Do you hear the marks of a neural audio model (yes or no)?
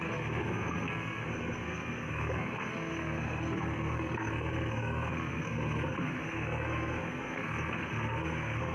yes